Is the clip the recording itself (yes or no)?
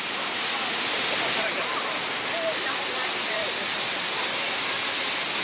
yes